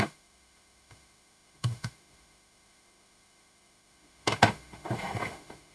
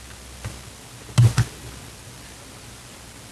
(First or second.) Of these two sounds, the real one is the second